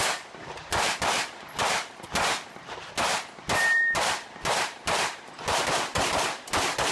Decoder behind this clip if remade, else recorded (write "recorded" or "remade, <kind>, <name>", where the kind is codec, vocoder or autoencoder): remade, vocoder, BigVGAN v2